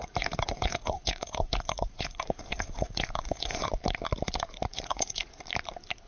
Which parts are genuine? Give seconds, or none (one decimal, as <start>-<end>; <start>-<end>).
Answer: 3.7-4.7; 5.4-6.1